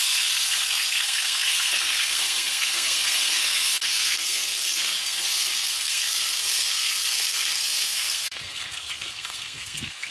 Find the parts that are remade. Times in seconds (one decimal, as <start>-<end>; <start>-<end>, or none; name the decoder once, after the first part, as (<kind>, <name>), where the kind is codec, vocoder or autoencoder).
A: 0.0-10.1 (codec, SNAC)